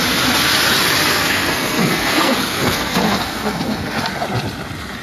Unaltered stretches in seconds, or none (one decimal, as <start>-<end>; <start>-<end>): 0.0-1.1; 4.1-5.0